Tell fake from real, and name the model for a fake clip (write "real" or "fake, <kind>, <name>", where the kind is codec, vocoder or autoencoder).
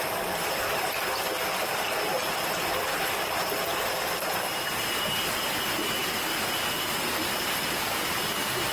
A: real